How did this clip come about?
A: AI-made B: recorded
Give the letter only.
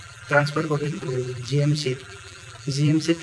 A